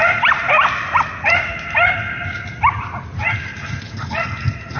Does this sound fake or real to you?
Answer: real